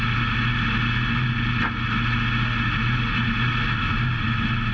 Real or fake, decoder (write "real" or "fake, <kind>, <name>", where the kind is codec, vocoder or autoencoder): real